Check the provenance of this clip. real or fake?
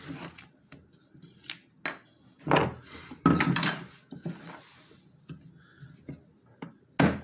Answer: real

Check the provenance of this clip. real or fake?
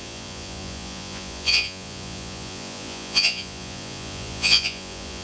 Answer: fake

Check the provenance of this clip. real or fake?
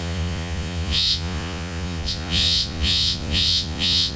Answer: fake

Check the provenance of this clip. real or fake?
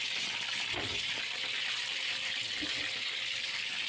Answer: real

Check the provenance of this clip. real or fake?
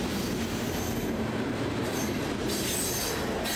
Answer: real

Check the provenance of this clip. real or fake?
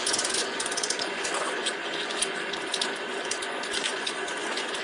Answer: fake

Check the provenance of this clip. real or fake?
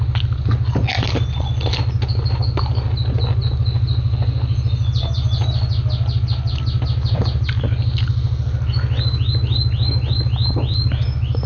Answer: real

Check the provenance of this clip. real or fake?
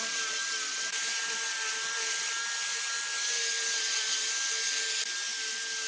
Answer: real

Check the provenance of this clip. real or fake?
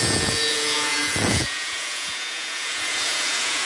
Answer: fake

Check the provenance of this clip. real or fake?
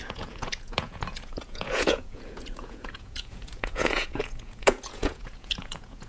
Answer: fake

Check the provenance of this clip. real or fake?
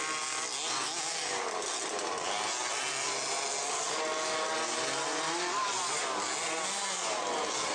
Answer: real